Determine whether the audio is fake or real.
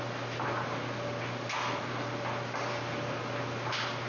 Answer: real